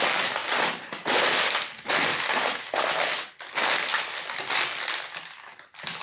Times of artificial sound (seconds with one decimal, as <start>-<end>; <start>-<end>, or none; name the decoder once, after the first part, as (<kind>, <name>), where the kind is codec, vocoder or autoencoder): 0.4-1.7 (vocoder, BigVGAN v2); 3.9-4.6